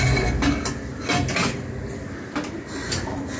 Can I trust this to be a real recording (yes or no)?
yes